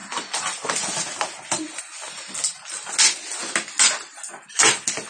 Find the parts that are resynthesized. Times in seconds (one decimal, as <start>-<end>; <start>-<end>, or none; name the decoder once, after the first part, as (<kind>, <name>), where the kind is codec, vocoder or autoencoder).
none